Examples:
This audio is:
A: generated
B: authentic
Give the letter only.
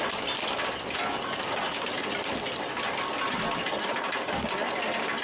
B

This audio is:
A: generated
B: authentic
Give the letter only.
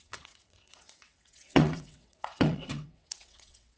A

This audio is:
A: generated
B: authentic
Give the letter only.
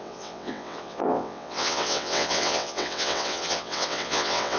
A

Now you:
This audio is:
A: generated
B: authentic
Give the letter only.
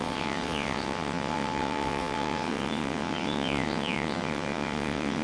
A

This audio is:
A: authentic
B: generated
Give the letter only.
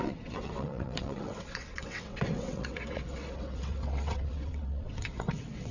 B